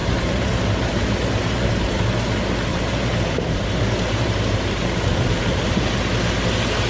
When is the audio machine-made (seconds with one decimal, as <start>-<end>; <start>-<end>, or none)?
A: 0.0-2.0; 2.7-6.3